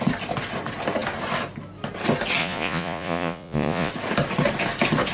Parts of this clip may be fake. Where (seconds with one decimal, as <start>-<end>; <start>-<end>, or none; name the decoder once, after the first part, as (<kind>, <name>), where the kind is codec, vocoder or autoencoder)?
2.4-3.9 (vocoder, Vocos)